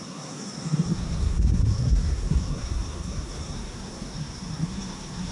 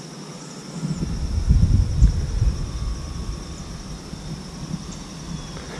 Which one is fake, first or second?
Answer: first